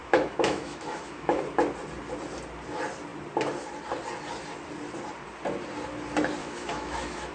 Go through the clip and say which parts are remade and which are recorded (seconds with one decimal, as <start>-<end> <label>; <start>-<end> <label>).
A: 0.0-1.4 remade; 1.4-6.4 recorded; 6.4-7.3 remade